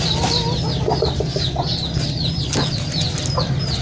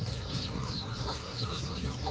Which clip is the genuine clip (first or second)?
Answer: first